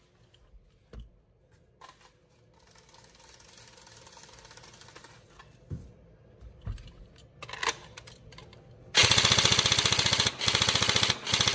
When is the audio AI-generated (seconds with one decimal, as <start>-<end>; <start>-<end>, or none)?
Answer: none